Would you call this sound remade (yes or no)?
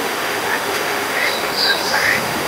yes